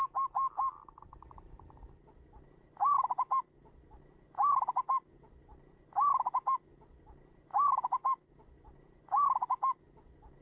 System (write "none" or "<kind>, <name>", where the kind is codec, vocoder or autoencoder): none